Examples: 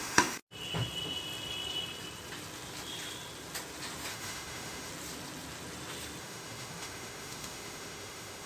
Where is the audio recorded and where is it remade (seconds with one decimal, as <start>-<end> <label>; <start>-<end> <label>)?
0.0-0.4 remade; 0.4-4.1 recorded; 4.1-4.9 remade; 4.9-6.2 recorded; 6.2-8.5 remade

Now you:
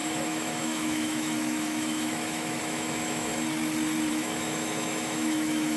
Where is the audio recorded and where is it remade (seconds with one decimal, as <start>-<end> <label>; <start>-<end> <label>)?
0.0-3.3 remade; 3.3-4.1 recorded; 4.1-5.8 remade

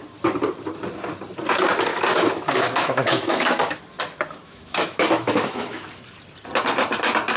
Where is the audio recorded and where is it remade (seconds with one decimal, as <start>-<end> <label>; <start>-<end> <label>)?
0.0-1.9 recorded; 1.9-3.8 remade; 3.8-4.4 recorded; 4.4-5.9 remade; 5.9-7.4 recorded

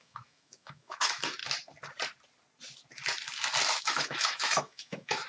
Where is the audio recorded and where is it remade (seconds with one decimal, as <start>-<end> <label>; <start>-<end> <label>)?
0.0-1.4 remade; 1.4-3.8 recorded; 3.8-5.3 remade

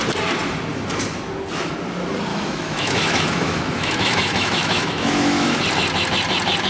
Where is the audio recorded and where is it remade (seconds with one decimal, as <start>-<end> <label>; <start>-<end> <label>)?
0.0-2.3 recorded; 2.3-5.6 remade; 5.6-6.7 recorded